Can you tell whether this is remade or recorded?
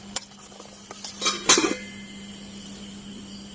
recorded